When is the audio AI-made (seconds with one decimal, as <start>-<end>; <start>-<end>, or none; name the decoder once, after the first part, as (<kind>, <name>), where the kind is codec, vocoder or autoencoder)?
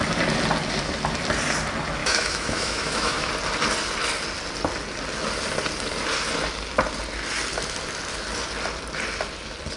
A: 2.0-3.3 (autoencoder, DAC-VAE)